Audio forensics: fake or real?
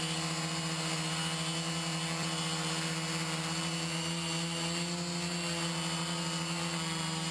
real